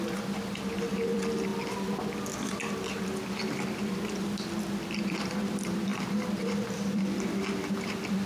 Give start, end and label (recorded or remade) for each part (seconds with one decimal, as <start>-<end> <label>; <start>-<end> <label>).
0.0-1.5 remade; 1.5-4.9 recorded; 4.9-8.3 remade